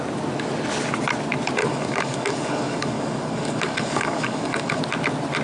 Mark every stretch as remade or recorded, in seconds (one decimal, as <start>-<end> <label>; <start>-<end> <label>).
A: 0.0-1.6 recorded; 1.6-4.8 remade; 4.8-5.4 recorded